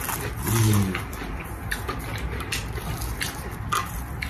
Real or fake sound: real